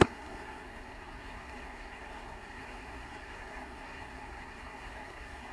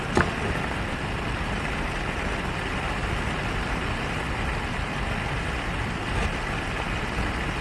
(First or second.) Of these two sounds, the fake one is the first